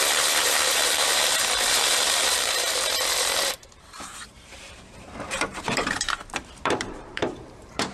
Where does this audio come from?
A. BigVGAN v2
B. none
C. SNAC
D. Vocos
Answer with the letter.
A